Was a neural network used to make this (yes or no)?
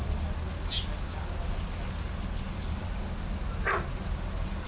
no